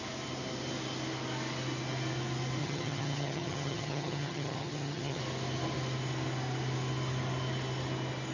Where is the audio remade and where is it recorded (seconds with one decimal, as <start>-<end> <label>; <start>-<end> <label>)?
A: 0.0-2.6 recorded; 2.6-5.2 remade; 5.2-8.3 recorded